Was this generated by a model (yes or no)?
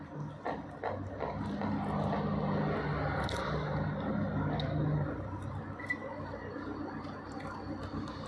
no